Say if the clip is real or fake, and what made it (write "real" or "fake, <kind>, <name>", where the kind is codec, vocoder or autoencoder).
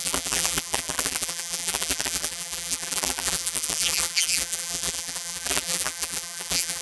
fake, vocoder, BigVGAN v2